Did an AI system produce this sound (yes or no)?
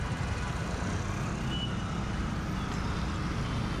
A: no